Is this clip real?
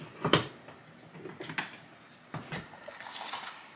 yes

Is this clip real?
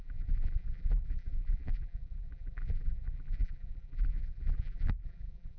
no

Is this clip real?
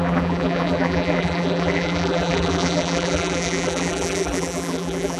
no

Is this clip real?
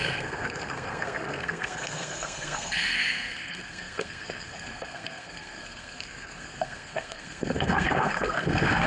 no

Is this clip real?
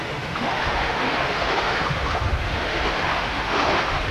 no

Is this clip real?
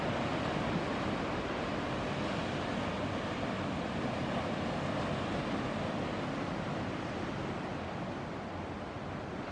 yes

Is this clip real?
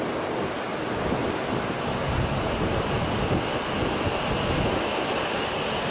yes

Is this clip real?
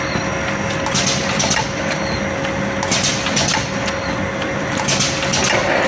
yes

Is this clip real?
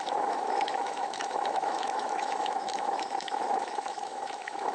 no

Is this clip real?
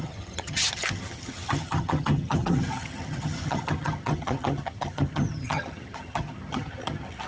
no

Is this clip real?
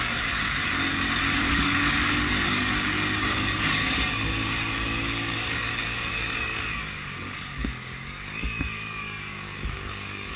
no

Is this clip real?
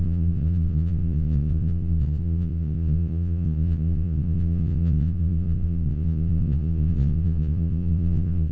no